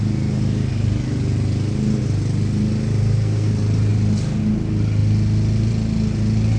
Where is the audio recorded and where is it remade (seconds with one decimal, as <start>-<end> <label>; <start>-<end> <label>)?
0.0-3.0 recorded; 3.0-3.5 remade; 3.5-6.6 recorded